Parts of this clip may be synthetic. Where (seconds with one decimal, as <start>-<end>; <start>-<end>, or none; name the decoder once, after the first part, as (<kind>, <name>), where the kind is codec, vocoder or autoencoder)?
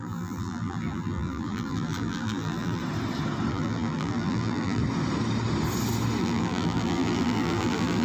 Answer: 0.0-2.8 (vocoder, BigVGAN v2); 3.5-4.8; 6.2-8.0